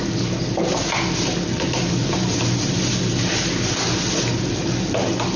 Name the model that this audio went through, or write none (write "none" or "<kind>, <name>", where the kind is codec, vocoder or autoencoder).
none